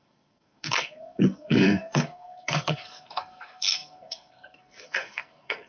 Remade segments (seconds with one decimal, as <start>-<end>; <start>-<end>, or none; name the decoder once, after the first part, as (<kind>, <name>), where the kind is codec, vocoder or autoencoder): 0.0-5.7 (codec, SNAC)